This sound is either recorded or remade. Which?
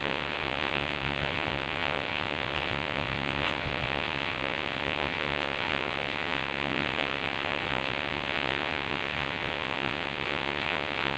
remade